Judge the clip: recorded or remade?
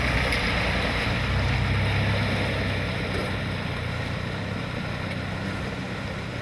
recorded